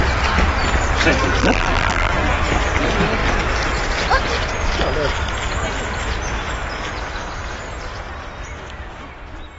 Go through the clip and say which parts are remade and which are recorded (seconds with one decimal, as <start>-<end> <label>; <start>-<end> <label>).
0.0-1.4 recorded; 1.4-2.1 remade; 2.1-9.6 recorded